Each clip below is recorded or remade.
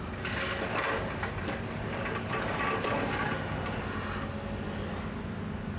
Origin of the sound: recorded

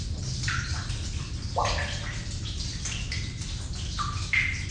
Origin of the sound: recorded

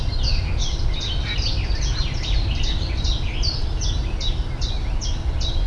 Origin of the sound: recorded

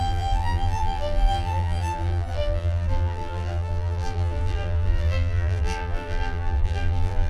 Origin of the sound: remade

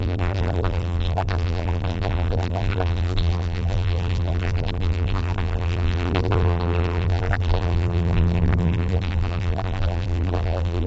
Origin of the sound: remade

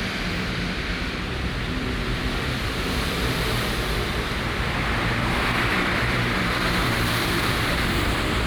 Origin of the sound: remade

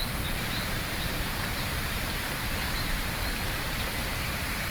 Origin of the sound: remade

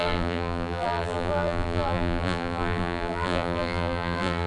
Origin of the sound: remade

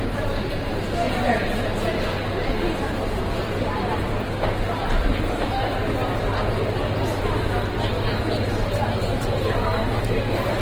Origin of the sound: remade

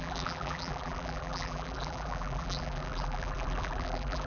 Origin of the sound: remade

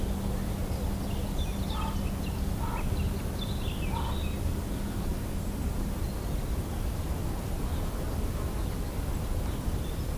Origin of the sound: recorded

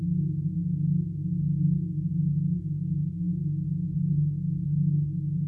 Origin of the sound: recorded